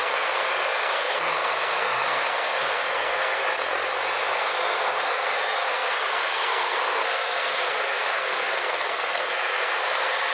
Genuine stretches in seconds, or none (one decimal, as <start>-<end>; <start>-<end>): 3.4-4.3